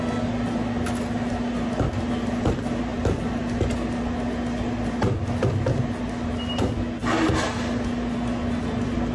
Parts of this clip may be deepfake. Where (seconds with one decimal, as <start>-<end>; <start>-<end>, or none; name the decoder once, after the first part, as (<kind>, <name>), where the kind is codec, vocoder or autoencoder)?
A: none